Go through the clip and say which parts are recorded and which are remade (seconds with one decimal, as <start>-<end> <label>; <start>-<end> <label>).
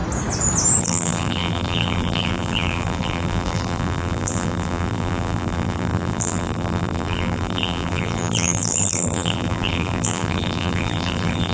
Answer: 0.0-0.8 recorded; 0.8-11.5 remade